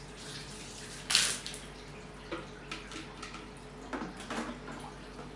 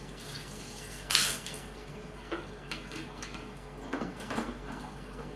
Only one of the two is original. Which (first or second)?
first